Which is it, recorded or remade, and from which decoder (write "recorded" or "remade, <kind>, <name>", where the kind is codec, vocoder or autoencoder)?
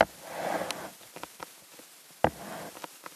recorded